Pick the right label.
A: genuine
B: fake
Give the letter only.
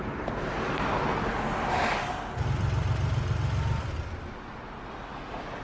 B